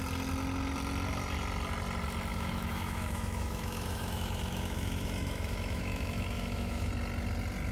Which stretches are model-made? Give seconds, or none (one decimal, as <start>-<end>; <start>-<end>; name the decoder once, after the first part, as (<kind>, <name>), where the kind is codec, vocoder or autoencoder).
2.3-6.9 (autoencoder, DAC-VAE)